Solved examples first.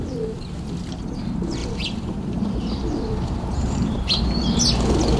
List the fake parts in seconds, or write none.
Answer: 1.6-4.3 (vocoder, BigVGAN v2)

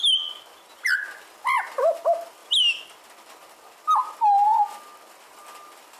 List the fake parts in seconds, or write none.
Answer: none

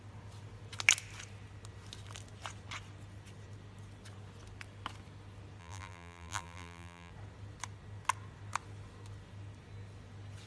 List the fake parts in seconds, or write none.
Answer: 5.6-7.1 (vocoder, BigVGAN v2)

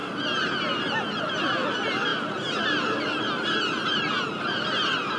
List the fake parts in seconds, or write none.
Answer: 1.2-5.2 (vocoder, BigVGAN v2)

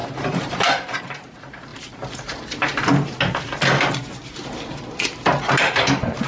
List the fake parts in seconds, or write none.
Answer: 0.0-1.0 (vocoder, BigVGAN v2)